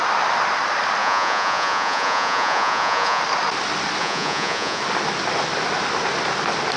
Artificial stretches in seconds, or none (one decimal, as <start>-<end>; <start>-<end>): 1.0-3.2; 4.0-4.8